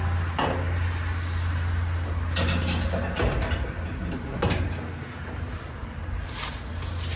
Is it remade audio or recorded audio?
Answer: recorded